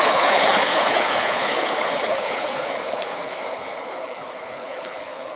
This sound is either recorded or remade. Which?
remade